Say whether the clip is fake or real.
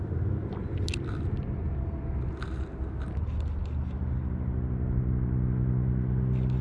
real